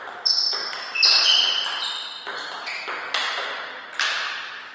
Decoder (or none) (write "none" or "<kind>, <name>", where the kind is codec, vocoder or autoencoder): none